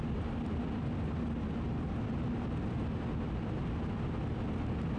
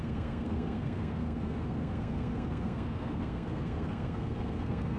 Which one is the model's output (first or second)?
second